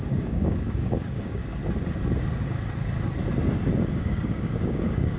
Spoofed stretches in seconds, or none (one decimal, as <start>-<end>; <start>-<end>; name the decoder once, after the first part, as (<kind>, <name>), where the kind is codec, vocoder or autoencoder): 0.0-1.4 (codec, DAC); 3.9-5.2